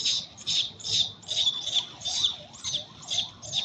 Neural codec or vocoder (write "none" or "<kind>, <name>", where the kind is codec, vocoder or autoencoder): none